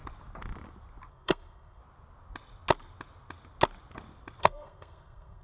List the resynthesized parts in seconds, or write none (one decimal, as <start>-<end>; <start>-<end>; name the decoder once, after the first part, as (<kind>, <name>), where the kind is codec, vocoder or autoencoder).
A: 1.1-1.8 (codec, SNAC); 4.4-5.4